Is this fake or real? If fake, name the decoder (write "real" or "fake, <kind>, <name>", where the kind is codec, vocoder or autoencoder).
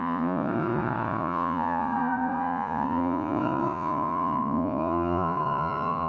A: fake, vocoder, Vocos